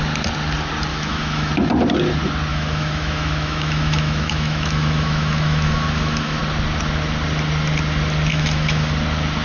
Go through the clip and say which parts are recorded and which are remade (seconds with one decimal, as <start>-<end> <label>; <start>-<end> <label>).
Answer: 0.0-0.9 recorded; 0.9-1.5 remade; 1.5-2.5 recorded; 2.5-6.4 remade; 6.4-8.3 recorded; 8.3-8.9 remade; 8.9-9.4 recorded